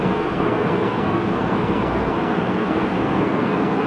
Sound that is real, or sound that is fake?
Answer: fake